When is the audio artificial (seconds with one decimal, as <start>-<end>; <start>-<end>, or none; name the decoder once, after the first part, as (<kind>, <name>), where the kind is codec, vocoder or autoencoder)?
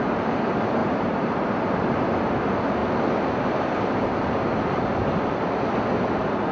0.8-2.1 (vocoder, BigVGAN v2)